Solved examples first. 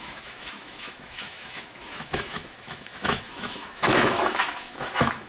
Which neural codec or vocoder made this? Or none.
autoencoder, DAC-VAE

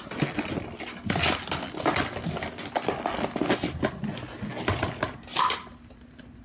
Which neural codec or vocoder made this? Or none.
none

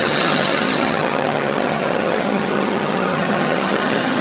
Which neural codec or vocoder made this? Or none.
vocoder, HiFi-GAN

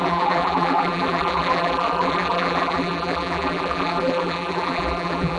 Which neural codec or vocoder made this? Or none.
vocoder, BigVGAN v2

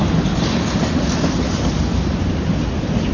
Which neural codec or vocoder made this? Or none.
none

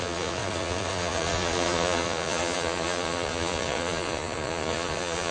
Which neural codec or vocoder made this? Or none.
vocoder, Vocos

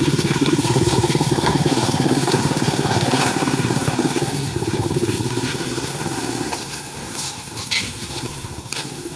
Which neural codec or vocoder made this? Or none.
codec, SNAC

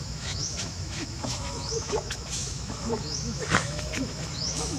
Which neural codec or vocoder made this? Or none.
autoencoder, DAC-VAE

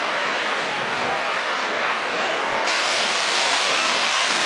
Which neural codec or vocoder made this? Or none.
codec, DAC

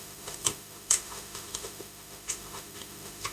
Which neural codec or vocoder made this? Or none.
autoencoder, DAC-VAE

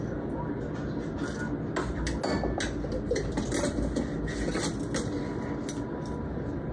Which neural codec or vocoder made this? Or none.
none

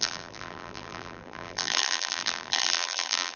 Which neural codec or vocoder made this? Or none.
vocoder, BigVGAN v2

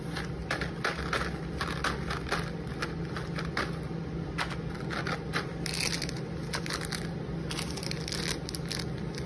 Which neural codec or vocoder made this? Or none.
none